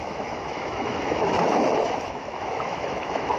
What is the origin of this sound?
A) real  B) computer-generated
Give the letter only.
B